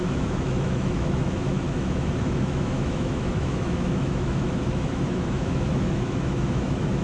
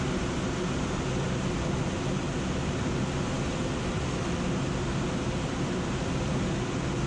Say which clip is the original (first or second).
second